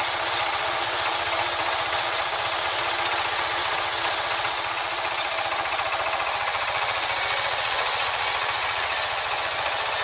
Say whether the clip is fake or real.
fake